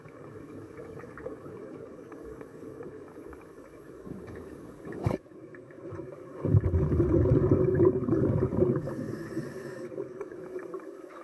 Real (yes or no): no